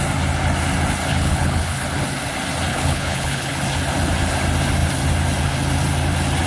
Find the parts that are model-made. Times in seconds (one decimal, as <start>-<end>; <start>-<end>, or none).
1.1-1.8; 2.7-3.6